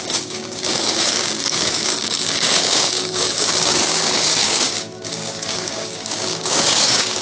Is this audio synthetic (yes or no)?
yes